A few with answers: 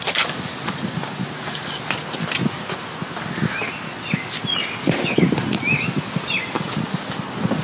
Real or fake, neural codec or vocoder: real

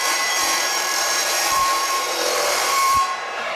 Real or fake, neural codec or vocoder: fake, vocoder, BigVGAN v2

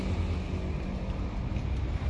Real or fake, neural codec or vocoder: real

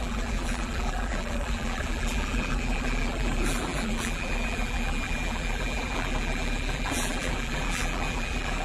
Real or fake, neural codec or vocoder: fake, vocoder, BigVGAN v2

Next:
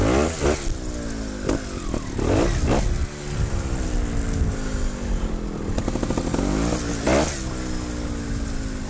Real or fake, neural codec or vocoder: real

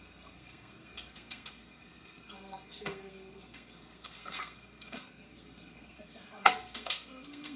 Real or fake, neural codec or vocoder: fake, codec, SNAC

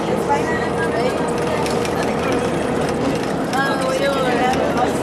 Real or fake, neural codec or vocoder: real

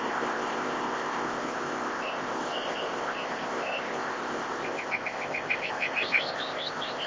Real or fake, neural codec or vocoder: fake, codec, ZipCodec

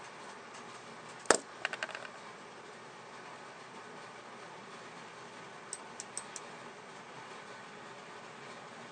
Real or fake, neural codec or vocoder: real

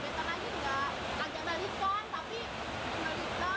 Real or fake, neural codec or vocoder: real